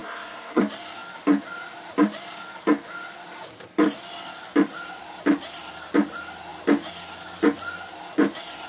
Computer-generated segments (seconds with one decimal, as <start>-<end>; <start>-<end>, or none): 0.0-0.6